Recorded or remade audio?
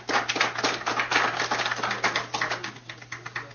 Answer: recorded